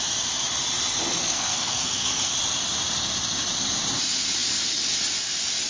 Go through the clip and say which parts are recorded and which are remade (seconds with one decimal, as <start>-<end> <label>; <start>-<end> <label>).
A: 0.0-1.3 recorded; 1.3-2.3 remade; 2.3-5.7 recorded